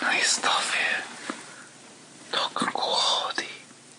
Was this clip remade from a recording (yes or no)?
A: yes